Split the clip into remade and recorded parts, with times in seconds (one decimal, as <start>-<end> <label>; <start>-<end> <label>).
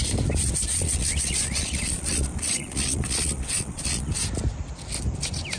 0.0-0.7 recorded; 0.7-4.1 remade; 4.1-5.6 recorded